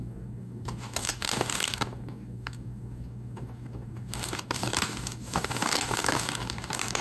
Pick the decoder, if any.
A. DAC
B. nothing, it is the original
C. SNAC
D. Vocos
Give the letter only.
A